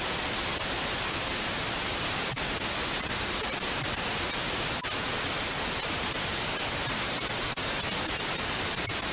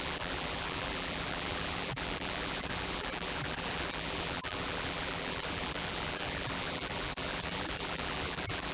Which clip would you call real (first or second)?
first